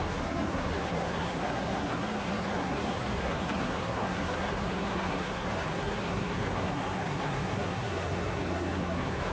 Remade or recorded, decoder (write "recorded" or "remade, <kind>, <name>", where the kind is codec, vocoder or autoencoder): remade, codec, SNAC